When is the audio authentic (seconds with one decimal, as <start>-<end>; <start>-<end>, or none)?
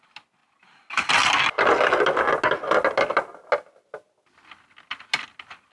0.0-5.7